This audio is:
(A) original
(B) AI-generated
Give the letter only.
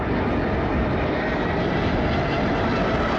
A